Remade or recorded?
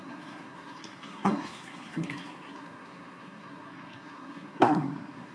remade